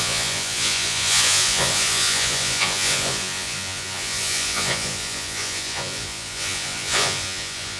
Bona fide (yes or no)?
no